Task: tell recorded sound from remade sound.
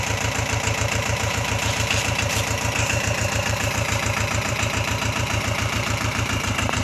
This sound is remade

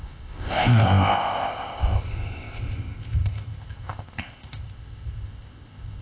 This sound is remade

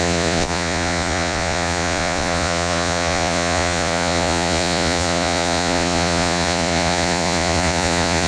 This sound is remade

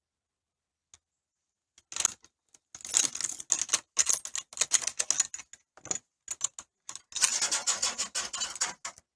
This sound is recorded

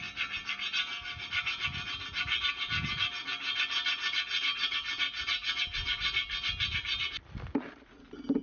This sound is recorded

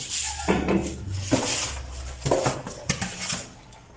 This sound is recorded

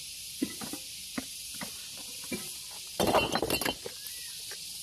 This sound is recorded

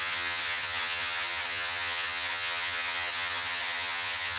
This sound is remade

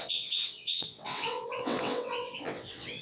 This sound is remade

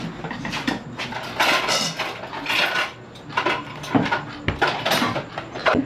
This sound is recorded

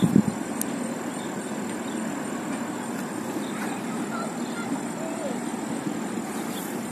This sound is remade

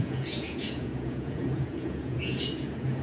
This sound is remade